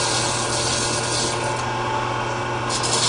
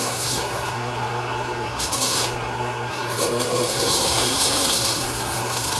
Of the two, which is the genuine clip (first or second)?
first